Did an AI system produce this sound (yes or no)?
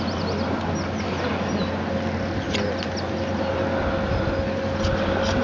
no